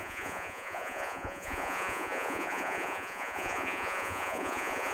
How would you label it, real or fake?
fake